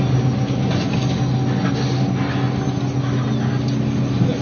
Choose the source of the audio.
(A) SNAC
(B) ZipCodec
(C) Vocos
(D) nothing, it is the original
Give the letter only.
D